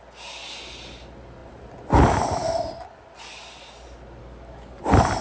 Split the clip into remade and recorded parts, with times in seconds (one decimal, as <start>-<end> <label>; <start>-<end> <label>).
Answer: 0.0-4.2 recorded; 4.2-4.8 remade; 4.8-5.2 recorded

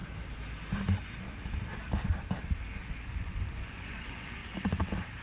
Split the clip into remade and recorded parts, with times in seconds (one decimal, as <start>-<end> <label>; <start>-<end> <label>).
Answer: 0.0-3.1 recorded; 3.1-4.4 remade; 4.4-5.2 recorded

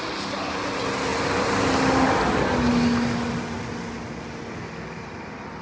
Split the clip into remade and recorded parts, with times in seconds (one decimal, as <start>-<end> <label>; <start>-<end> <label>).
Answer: 0.0-5.6 recorded

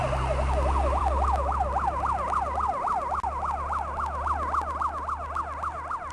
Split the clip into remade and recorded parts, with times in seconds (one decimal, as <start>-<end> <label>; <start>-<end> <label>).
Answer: 0.0-6.1 recorded

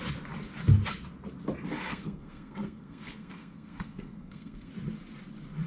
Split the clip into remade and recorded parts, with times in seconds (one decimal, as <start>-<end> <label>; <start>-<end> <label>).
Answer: 0.0-1.7 recorded; 1.7-4.7 remade; 4.7-5.7 recorded